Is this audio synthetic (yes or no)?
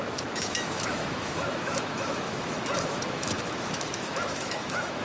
yes